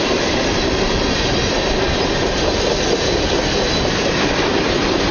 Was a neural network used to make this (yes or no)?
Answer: no